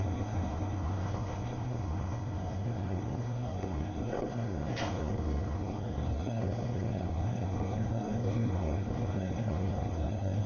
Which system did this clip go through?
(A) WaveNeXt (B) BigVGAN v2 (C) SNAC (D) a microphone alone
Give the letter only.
C